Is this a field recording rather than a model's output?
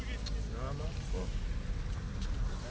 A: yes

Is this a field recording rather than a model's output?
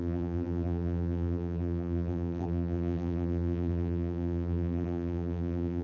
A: no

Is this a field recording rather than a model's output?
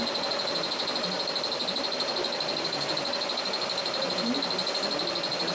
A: yes